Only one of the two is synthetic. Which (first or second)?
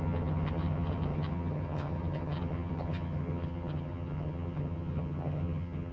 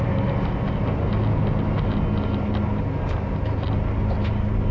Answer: first